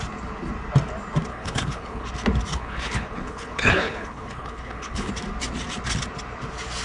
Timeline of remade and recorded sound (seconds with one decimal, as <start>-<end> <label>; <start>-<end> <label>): 0.0-1.3 recorded; 1.3-2.1 remade; 2.1-2.5 recorded; 2.5-5.1 remade; 5.1-6.8 recorded